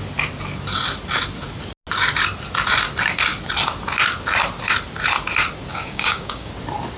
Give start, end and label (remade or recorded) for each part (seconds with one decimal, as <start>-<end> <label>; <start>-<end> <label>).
0.0-5.7 recorded; 5.7-6.5 remade; 6.5-7.0 recorded